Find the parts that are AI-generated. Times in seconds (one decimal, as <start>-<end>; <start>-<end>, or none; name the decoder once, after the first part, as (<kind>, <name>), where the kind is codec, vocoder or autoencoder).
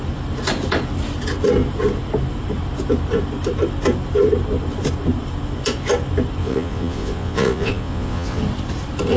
6.4-8.4 (vocoder, Vocos)